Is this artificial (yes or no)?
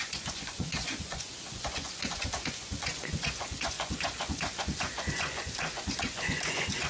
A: yes